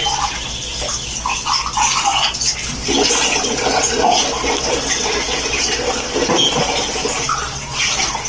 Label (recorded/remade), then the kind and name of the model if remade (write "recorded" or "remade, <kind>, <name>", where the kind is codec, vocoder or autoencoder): recorded